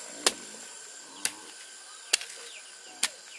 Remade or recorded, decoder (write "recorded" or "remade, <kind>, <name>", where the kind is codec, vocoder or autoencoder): recorded